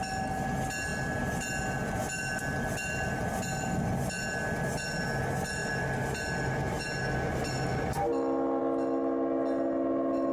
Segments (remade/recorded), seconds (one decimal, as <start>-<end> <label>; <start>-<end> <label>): 0.0-10.3 recorded